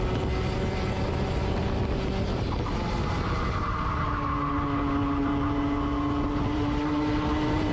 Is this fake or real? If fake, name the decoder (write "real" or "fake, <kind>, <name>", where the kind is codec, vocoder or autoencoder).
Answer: real